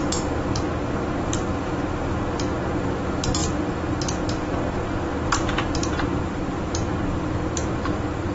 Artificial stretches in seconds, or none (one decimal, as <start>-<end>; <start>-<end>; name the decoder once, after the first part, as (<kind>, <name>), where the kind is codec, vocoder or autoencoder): none